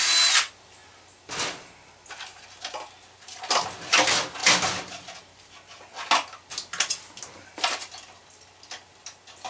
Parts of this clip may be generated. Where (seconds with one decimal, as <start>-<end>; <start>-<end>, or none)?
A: none